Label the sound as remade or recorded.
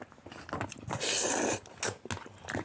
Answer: recorded